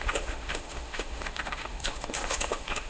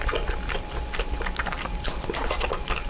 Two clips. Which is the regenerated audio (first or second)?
first